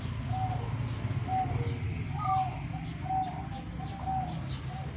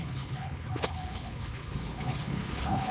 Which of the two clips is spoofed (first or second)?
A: second